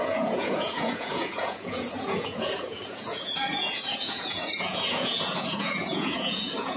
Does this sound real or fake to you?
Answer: fake